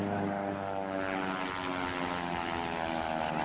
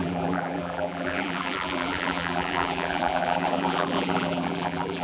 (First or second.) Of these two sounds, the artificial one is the second